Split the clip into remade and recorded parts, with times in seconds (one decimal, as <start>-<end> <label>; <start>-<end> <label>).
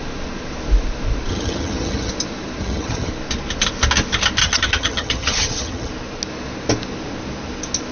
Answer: 0.0-1.3 recorded; 1.3-2.1 remade; 2.1-2.6 recorded; 2.6-3.1 remade; 3.1-4.4 recorded; 4.4-5.9 remade; 5.9-7.9 recorded